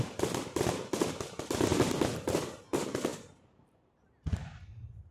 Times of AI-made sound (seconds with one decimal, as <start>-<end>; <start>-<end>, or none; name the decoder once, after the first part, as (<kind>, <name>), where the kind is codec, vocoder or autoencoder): 3.1-4.0 (vocoder, BigVGAN v2)